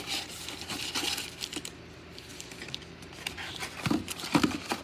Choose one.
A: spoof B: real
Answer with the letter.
B